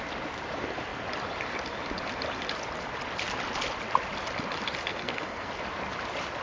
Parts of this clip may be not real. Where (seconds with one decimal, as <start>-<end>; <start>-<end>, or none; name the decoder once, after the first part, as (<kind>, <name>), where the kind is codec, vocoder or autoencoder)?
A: 4.9-5.5 (codec, SNAC)